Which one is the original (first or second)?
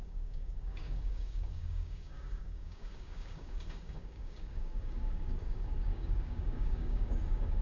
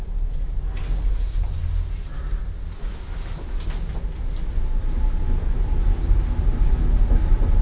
second